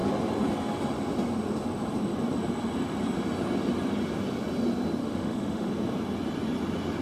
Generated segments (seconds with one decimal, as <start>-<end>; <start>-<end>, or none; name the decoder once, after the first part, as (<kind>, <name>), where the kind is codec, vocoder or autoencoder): 5.0-5.7 (autoencoder, DAC-VAE)